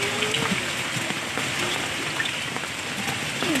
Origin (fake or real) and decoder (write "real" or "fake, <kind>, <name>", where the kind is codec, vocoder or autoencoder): real